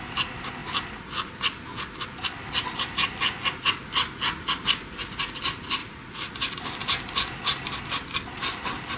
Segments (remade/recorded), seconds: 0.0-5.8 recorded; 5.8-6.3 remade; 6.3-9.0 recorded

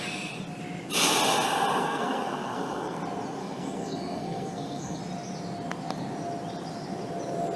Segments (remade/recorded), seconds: 0.0-1.8 recorded; 1.8-3.0 remade; 3.0-3.4 recorded; 3.4-5.0 remade; 5.0-7.6 recorded

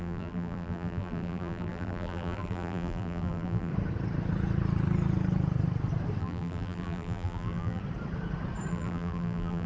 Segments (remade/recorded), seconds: 0.0-3.7 remade; 3.7-6.2 recorded; 6.2-7.8 remade; 7.8-8.7 recorded; 8.7-9.7 remade

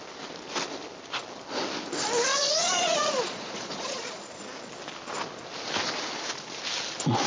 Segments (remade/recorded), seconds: 0.0-2.3 recorded; 2.3-4.4 remade; 4.4-7.3 recorded

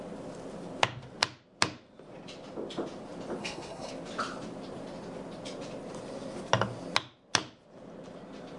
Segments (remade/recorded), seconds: 0.0-3.4 recorded; 3.4-3.9 remade; 3.9-8.6 recorded

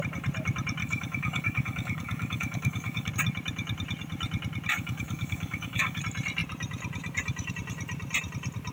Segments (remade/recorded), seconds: 0.0-0.8 recorded; 0.8-3.1 remade; 3.1-4.7 recorded; 4.7-6.0 remade; 6.0-8.7 recorded